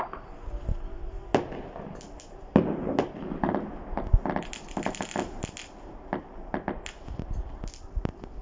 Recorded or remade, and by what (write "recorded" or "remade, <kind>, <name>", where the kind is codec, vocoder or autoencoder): recorded